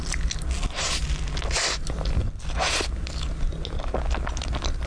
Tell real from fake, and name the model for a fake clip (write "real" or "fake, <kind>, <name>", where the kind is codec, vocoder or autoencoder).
real